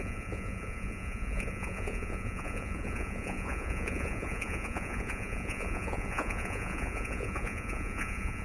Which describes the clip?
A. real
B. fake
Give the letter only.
B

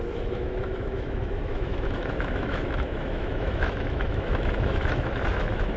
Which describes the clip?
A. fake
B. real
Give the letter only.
A